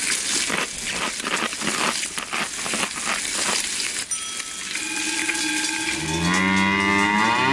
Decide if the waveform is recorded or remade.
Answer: recorded